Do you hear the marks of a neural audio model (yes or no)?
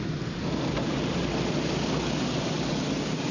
no